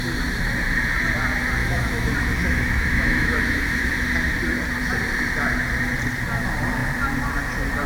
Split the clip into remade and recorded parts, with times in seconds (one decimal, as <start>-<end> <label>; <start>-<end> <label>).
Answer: 0.0-1.6 recorded; 1.6-3.9 remade; 3.9-7.9 recorded